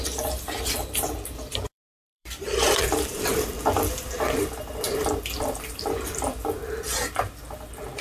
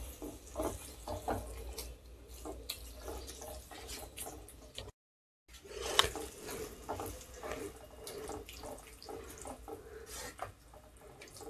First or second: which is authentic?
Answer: second